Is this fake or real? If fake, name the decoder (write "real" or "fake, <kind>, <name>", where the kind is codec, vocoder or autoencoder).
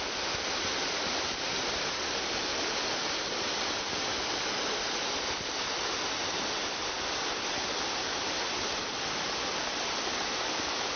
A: real